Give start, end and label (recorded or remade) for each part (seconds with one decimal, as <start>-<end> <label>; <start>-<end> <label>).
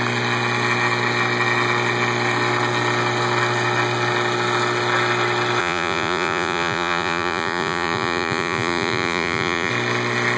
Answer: 0.0-5.6 recorded; 5.6-9.7 remade; 9.7-10.4 recorded